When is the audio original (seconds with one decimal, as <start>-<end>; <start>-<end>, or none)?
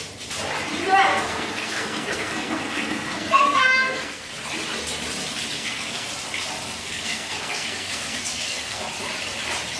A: 0.0-1.1; 4.3-5.5; 6.1-6.8; 8.8-9.8